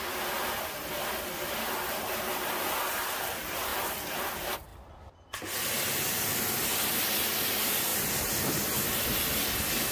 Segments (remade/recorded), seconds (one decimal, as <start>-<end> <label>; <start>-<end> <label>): 0.0-9.9 recorded